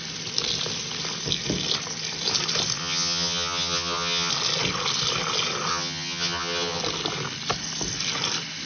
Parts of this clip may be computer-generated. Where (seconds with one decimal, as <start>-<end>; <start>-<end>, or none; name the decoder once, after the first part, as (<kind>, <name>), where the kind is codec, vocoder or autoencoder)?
2.8-4.3 (vocoder, HiFi-GAN); 5.7-6.8